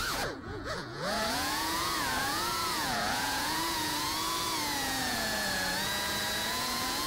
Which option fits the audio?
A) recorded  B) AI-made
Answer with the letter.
B